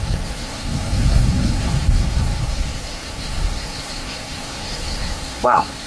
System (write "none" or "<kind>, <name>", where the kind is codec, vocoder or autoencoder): codec, SNAC